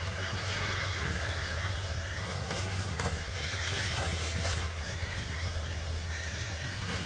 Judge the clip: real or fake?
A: fake